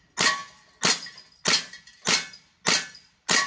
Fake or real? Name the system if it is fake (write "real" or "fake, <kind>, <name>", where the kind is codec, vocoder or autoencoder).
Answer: real